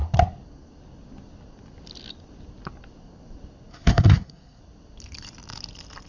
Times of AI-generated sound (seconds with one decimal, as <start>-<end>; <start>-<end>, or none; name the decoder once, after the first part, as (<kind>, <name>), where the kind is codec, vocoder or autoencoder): 3.7-4.6 (codec, SNAC)